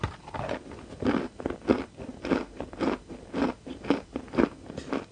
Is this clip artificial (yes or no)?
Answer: no